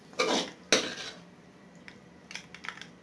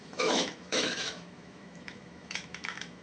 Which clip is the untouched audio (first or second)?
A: first